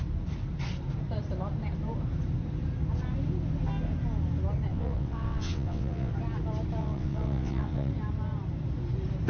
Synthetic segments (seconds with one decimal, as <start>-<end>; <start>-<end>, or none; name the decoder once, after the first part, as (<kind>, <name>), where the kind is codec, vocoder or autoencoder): 4.7-6.1 (vocoder, WaveNeXt); 6.8-7.9